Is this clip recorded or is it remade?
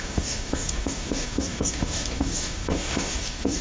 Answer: remade